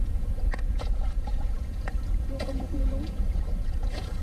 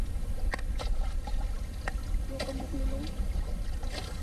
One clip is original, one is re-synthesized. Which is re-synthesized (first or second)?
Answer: first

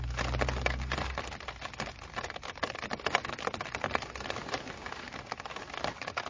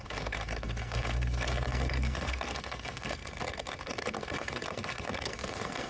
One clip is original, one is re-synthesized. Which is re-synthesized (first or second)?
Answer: second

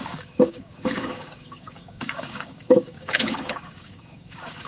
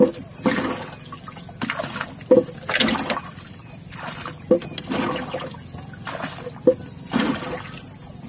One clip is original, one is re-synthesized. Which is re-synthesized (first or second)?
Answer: first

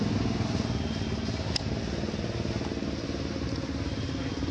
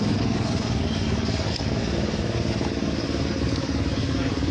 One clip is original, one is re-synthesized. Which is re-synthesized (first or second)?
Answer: second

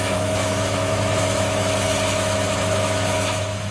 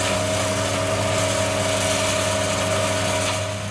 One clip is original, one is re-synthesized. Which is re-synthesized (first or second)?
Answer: first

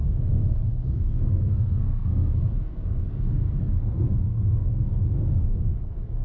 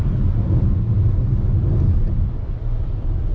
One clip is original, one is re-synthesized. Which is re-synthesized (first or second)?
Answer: first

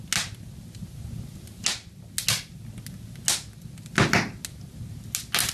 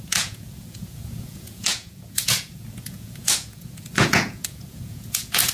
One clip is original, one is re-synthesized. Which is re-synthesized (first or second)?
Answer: second